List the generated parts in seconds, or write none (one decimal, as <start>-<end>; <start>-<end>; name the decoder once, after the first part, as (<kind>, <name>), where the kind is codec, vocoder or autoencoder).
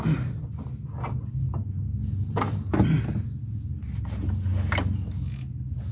none